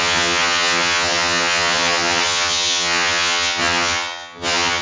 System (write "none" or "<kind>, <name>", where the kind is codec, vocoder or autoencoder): vocoder, HiFi-GAN